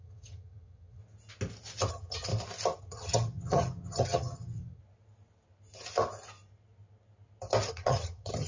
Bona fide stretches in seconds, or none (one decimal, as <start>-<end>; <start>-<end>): 1.0-1.9; 2.3-2.8; 4.8-7.7